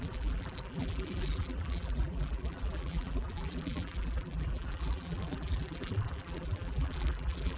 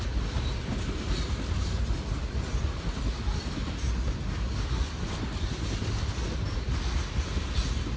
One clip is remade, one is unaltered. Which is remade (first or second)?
first